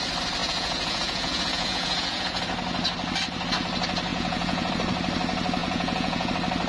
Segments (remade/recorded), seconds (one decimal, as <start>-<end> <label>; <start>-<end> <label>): 0.0-0.4 recorded; 0.4-2.4 remade; 2.4-4.1 recorded; 4.1-4.7 remade; 4.7-5.6 recorded; 5.6-6.3 remade; 6.3-6.7 recorded